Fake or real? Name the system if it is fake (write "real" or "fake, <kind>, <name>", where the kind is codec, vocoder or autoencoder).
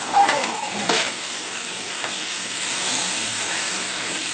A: fake, codec, DAC